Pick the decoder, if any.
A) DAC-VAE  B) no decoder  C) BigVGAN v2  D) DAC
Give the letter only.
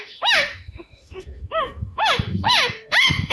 A